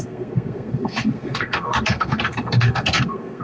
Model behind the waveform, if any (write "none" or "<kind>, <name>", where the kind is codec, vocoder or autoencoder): codec, SNAC